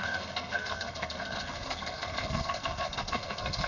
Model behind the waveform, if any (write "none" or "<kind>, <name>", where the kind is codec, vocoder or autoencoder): codec, SNAC